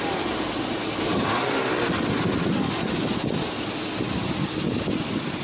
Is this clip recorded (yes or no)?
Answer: yes